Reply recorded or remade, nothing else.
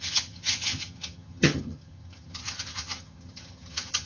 remade